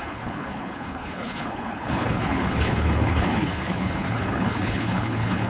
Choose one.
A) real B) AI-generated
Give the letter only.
B